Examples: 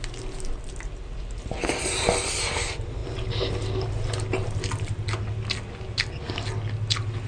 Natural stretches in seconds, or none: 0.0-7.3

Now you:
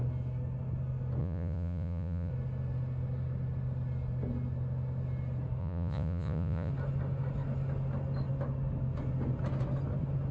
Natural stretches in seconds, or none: 0.0-1.2; 2.3-5.6; 6.7-10.3

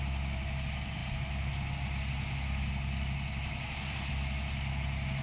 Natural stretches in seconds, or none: 0.0-5.2

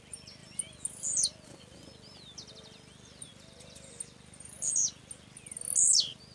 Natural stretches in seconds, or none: 0.0-6.3